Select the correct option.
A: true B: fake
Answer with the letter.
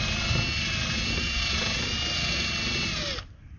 A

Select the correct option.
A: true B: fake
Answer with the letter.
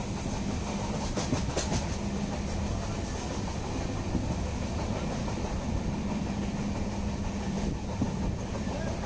A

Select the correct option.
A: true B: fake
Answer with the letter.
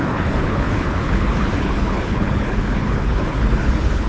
B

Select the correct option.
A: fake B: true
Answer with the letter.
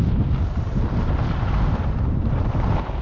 B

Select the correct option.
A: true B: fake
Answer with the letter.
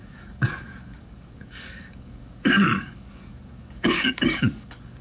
B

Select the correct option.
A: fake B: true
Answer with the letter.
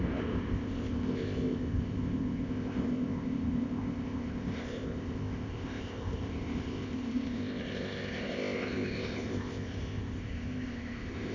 A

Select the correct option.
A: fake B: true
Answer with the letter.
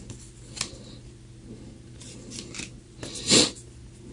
B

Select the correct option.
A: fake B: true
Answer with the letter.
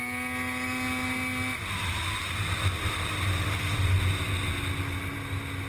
B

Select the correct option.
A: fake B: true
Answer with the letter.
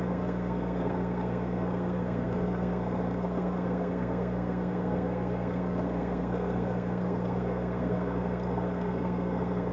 A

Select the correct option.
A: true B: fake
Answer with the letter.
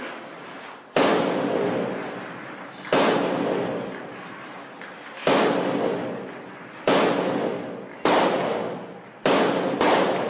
A